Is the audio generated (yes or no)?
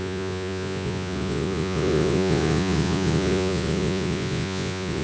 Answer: yes